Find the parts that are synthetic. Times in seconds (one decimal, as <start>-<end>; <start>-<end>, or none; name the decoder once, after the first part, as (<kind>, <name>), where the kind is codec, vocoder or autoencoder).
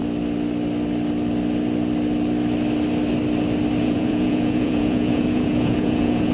3.8-6.3 (vocoder, Vocos)